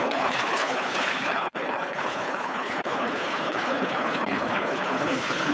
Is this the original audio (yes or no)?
no